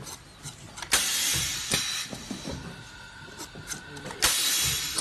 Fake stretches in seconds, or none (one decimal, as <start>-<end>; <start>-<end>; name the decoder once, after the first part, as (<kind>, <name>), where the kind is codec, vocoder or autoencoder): none

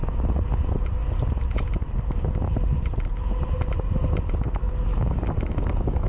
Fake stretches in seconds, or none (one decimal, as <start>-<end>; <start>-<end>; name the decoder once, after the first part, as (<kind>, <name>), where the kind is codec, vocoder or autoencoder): 4.9-6.1 (codec, DAC)

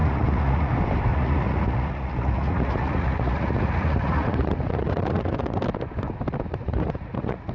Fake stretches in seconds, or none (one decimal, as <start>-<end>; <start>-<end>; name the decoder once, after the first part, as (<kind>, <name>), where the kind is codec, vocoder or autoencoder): 0.0-0.7 (vocoder, Vocos); 1.1-5.6; 6.5-7.5

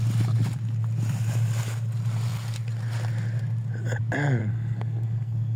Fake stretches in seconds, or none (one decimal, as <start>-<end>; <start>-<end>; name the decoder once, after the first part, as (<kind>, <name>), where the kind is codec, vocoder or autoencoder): 4.4-5.6 (codec, SNAC)

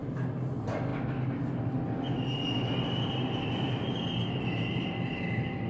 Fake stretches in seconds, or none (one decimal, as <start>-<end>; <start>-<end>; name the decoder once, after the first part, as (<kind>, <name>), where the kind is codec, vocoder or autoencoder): 0.0-0.5 (vocoder, BigVGAN v2)